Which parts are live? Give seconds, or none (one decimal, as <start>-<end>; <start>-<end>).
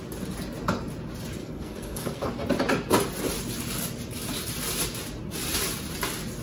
0.0-1.4; 2.3-6.4